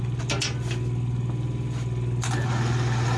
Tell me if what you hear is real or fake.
real